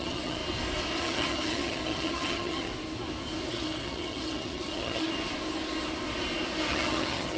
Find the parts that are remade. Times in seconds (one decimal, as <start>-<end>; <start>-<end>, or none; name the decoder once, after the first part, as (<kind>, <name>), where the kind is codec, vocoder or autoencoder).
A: 0.0-0.4 (vocoder, HiFi-GAN); 1.0-2.7; 3.5-5.1; 6.6-7.4